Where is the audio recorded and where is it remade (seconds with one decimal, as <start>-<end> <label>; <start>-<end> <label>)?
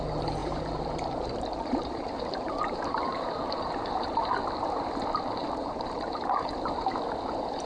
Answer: 0.0-0.4 recorded; 0.4-3.7 remade; 3.7-5.4 recorded; 5.4-6.0 remade; 6.0-7.7 recorded